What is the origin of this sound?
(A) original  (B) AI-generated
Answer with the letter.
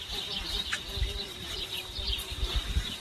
B